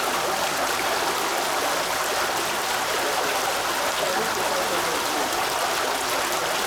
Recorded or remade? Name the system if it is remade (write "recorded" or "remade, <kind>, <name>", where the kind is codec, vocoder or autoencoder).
recorded